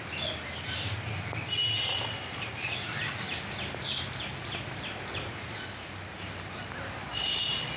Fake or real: real